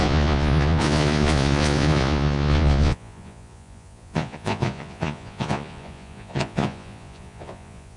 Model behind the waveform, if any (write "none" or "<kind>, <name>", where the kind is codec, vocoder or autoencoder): vocoder, Vocos